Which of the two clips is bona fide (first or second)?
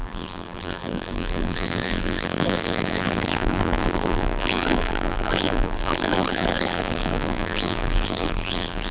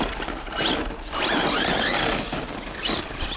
second